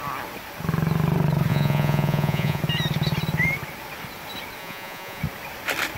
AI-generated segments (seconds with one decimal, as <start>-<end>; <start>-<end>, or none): 1.5-2.6; 4.6-5.2